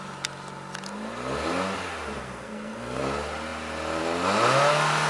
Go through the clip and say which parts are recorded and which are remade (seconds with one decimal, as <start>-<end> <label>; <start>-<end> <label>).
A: 0.0-2.2 recorded; 2.2-3.0 remade; 3.0-5.1 recorded